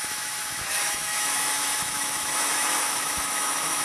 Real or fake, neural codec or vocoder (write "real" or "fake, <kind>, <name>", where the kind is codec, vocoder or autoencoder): fake, autoencoder, DAC-VAE